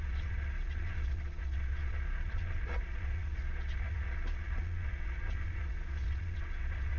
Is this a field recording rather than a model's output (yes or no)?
no